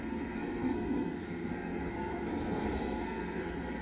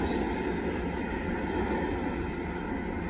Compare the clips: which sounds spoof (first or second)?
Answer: first